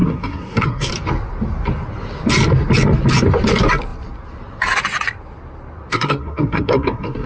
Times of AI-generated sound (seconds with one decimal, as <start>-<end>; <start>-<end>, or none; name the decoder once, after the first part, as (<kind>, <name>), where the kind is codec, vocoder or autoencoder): 0.0-0.9 (codec, SNAC); 5.9-7.3